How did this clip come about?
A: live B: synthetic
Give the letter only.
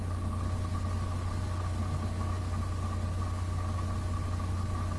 A